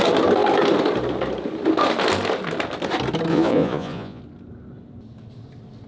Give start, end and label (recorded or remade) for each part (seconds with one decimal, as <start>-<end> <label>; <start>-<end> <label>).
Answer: 0.0-3.3 recorded; 3.3-4.2 remade; 4.2-5.9 recorded